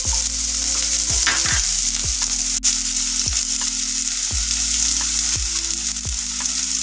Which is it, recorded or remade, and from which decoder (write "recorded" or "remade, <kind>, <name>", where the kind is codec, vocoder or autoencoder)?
recorded